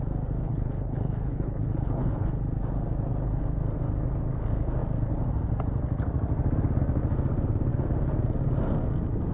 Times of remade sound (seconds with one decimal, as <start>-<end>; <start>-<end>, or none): 0.4-2.3